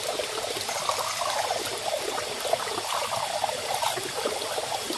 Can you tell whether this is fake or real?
real